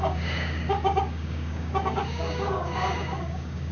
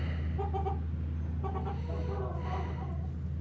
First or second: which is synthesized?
first